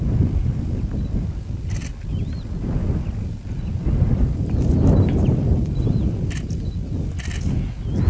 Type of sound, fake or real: real